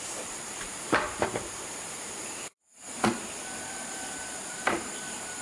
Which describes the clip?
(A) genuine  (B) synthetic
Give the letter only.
B